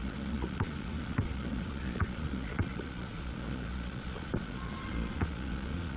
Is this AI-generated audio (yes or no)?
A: yes